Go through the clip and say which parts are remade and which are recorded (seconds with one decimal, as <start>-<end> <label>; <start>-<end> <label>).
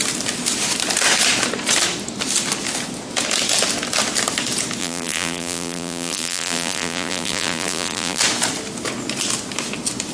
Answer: 0.0-4.8 recorded; 4.8-8.2 remade; 8.2-10.1 recorded